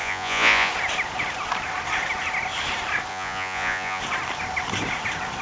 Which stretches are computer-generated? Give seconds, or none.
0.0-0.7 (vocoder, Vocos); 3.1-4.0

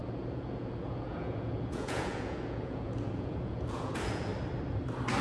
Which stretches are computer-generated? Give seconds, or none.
0.0-4.3 (vocoder, Vocos)

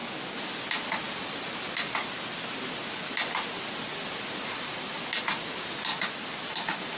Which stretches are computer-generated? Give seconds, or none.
none

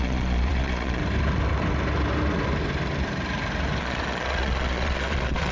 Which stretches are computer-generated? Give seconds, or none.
0.0-1.0 (vocoder, Vocos); 3.8-5.5

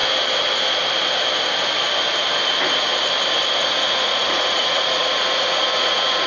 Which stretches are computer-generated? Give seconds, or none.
3.6-6.3 (vocoder, Vocos)

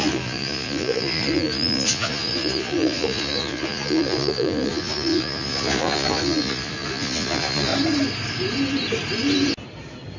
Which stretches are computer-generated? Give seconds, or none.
0.0-7.7 (vocoder, Vocos)

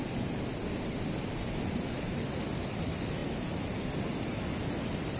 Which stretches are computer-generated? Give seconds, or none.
none